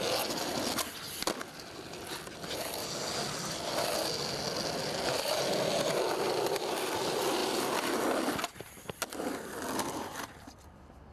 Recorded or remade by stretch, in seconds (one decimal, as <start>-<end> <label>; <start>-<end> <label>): 0.0-11.1 recorded